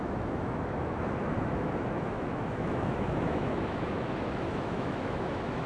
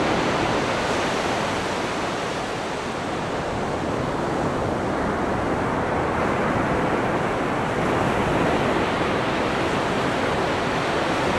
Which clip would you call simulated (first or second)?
first